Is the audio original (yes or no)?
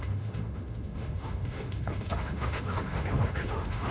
no